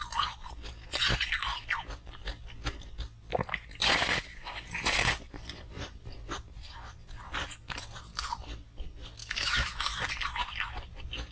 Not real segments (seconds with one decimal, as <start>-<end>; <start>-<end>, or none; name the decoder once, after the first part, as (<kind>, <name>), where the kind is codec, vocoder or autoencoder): 9.2-10.0 (autoencoder, DAC-VAE)